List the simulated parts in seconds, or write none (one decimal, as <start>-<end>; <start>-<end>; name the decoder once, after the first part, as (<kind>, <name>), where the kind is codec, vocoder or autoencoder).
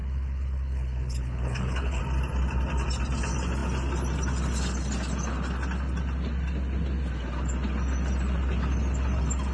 0.0-2.0 (codec, HILCodec)